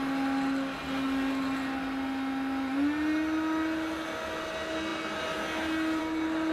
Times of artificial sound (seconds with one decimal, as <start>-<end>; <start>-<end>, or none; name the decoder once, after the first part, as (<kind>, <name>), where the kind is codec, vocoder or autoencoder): none